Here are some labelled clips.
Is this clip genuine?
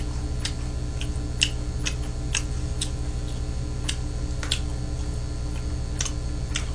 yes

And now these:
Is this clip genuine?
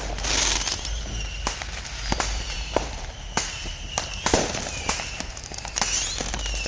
no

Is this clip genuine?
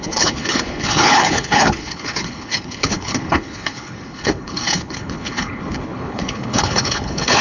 no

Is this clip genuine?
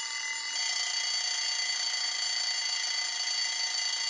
yes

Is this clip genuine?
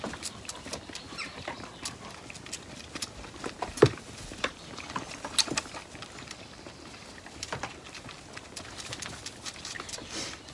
yes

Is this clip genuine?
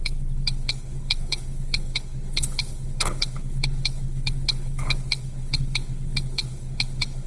no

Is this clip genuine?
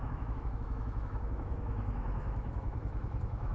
no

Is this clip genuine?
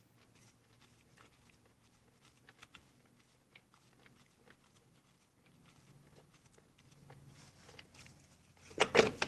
yes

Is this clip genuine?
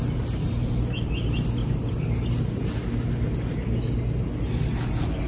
yes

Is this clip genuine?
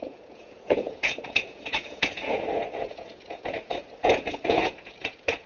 no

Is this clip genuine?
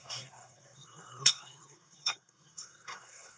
no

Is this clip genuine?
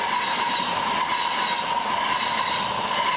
yes